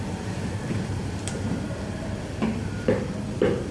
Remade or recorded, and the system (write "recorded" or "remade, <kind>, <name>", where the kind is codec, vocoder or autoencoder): recorded